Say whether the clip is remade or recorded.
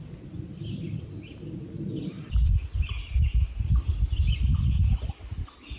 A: recorded